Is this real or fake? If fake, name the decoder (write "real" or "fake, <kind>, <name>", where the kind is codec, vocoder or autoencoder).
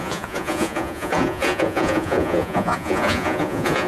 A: fake, vocoder, Vocos